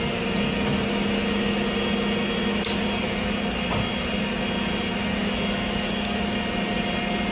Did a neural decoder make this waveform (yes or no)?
no